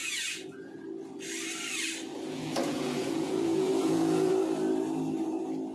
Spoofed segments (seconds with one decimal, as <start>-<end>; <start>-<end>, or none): 0.0-0.8; 2.1-4.3